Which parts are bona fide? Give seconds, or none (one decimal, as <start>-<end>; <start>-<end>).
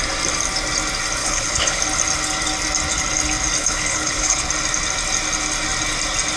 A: 0.0-1.2; 1.8-3.6; 4.5-6.4